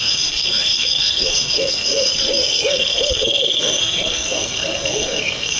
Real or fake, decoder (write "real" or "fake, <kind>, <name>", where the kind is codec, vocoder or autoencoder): fake, codec, SNAC